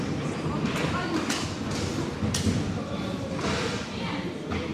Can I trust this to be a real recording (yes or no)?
no